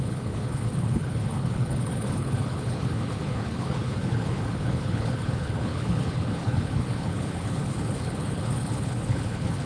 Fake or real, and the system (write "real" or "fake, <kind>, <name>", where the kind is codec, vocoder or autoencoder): fake, codec, HILCodec